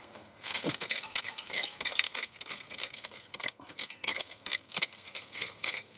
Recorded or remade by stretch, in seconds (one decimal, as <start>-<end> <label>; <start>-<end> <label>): 0.0-6.0 remade